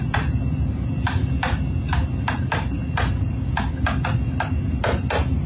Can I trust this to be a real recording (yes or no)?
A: yes